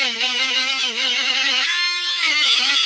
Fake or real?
fake